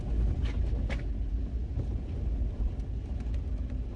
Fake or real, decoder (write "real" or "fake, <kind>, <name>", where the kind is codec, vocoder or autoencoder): real